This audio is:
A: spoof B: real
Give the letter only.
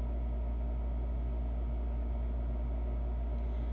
B